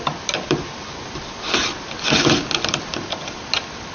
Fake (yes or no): no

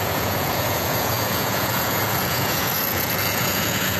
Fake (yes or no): yes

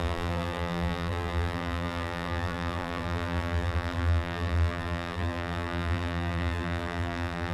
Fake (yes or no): yes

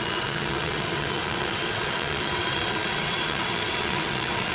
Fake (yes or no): yes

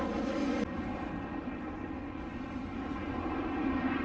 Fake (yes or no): no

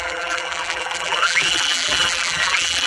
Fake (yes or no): yes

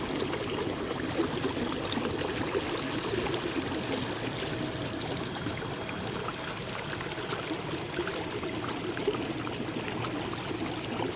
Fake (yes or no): no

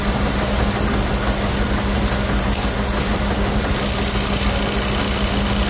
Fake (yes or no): no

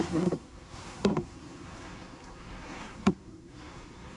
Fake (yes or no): yes